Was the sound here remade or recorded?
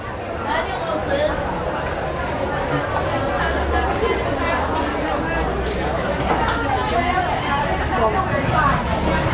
recorded